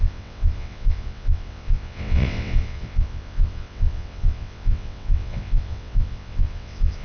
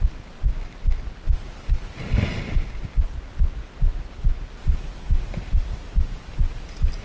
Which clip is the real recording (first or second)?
second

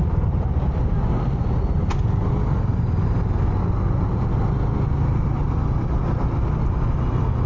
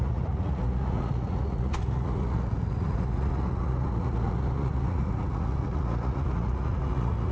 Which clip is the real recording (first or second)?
first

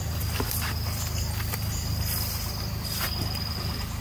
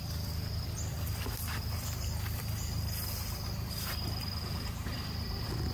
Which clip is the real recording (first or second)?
first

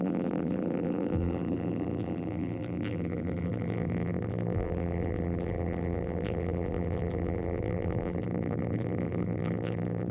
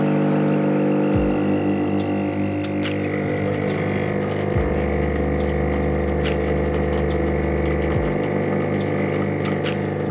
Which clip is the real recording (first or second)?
second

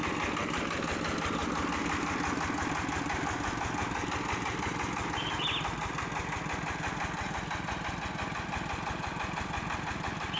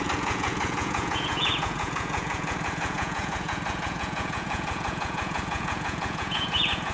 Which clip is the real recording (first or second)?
first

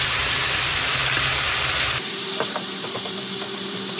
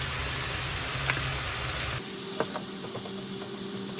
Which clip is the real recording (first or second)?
second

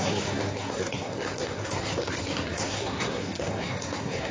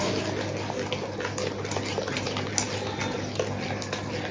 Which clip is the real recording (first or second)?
second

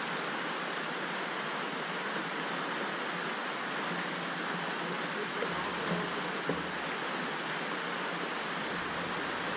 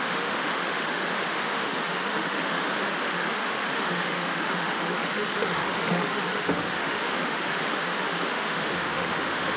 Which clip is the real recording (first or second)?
first